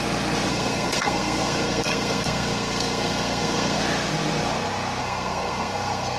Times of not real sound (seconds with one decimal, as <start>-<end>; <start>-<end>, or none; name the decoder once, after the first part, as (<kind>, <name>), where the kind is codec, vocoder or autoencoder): 0.5-3.8 (codec, SNAC); 5.0-6.2